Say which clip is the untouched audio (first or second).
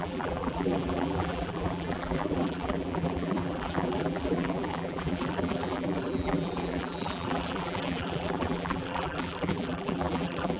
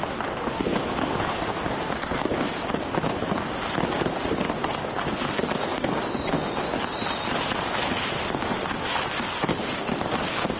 second